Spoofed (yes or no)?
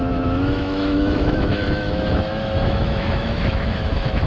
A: yes